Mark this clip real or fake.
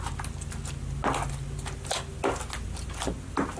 real